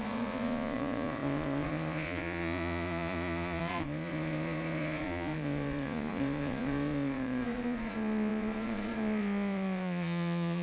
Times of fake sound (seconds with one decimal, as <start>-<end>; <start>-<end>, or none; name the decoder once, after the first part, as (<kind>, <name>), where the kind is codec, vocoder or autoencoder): 0.0-10.6 (vocoder, Vocos)